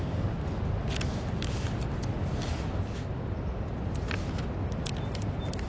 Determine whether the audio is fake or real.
real